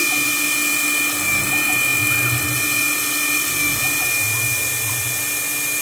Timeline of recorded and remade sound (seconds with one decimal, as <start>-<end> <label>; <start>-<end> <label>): 0.0-5.8 recorded